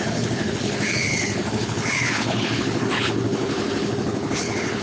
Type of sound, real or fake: fake